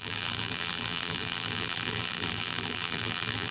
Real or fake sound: fake